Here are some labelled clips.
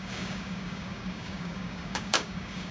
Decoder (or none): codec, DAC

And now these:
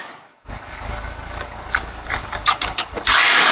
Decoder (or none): codec, DAC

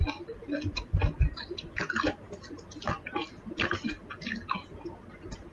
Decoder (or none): none